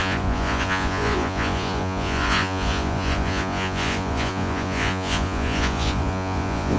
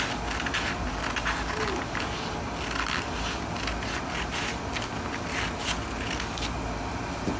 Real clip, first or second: second